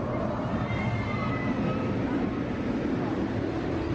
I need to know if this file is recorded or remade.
recorded